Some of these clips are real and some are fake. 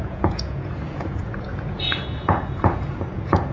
fake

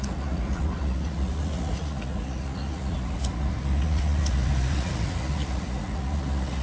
fake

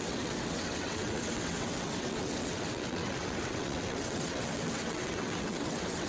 fake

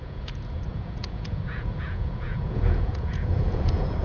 fake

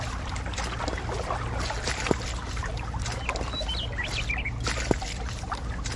real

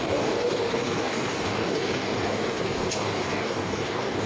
fake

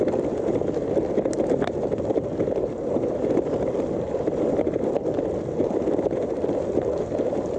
real